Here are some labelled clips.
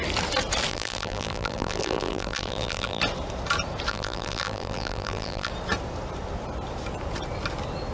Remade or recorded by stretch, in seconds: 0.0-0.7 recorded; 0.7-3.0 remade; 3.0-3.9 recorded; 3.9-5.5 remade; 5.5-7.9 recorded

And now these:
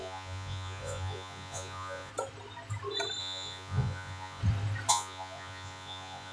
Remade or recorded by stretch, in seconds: 0.0-2.1 remade; 2.1-3.2 recorded; 3.2-4.4 remade; 4.4-4.9 recorded; 4.9-6.3 remade

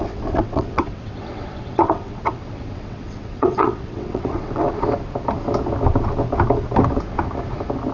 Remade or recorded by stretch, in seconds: 0.0-4.7 remade; 4.7-7.9 recorded

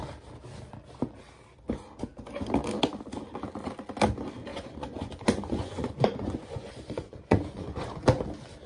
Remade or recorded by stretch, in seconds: 0.0-4.5 recorded; 4.5-7.9 remade; 7.9-8.7 recorded

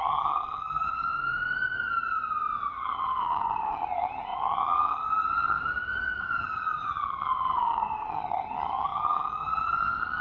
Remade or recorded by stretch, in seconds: 0.0-1.1 remade; 1.1-2.7 recorded; 2.7-5.6 remade; 5.6-6.2 recorded; 6.2-10.2 remade

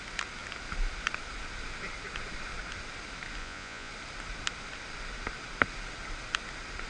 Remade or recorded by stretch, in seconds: 0.0-3.4 recorded; 3.4-3.9 remade; 3.9-6.9 recorded

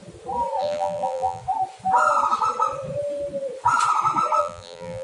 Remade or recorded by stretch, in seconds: 0.0-0.6 recorded; 0.6-1.4 remade; 1.4-4.4 recorded; 4.4-5.0 remade